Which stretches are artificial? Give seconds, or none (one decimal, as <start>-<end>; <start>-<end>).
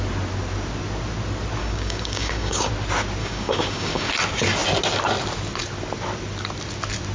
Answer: 1.6-2.7; 3.2-4.1